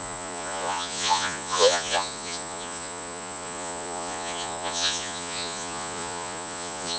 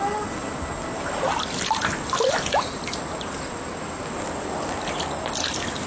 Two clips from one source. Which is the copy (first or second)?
first